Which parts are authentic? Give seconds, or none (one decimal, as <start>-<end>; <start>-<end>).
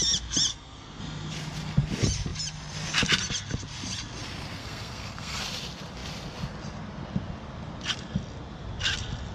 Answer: 0.0-0.5; 1.0-4.6; 5.4-9.3